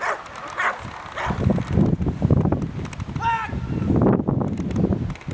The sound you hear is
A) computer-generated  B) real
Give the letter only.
B